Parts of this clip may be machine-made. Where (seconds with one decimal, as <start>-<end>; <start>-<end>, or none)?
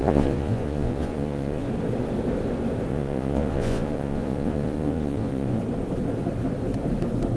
0.0-1.7; 2.9-5.6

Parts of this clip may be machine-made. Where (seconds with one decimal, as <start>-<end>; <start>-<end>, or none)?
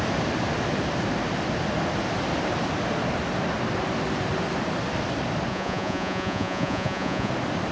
5.5-7.3